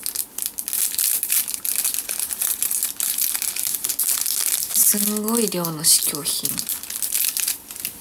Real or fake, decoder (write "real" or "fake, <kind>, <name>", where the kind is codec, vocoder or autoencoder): real